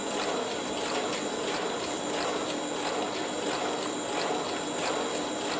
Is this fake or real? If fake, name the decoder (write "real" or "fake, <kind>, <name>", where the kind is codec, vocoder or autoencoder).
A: real